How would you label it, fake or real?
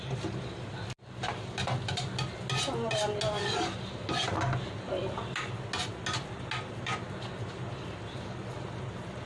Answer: real